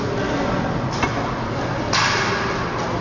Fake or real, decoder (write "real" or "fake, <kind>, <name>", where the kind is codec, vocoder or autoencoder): real